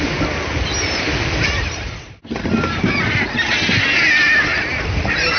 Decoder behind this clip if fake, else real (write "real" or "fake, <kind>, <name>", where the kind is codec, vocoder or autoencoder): real